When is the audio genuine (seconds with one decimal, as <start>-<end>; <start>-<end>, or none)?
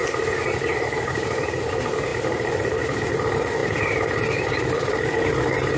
0.0-2.1; 2.7-3.6; 5.0-5.8